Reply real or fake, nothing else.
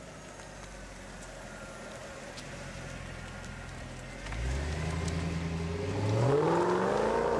real